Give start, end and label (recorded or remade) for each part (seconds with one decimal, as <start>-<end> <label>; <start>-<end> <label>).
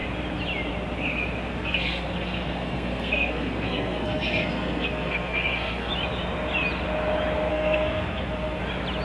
0.0-1.5 recorded; 1.5-5.9 remade; 5.9-7.5 recorded; 7.5-8.6 remade; 8.6-9.0 recorded